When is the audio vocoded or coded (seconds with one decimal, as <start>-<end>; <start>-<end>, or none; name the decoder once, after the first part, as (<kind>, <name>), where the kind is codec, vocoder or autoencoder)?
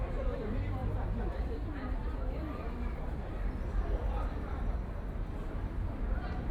0.0-2.0 (vocoder, BigVGAN v2); 5.9-6.5